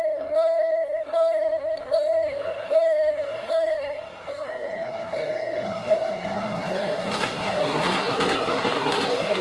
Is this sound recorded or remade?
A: remade